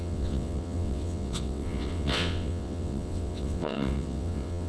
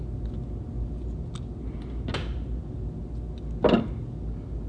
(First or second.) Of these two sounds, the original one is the second